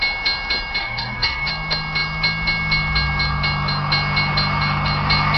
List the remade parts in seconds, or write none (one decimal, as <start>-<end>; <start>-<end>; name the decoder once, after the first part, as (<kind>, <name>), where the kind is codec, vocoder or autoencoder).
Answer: 0.8-1.5 (codec, SNAC)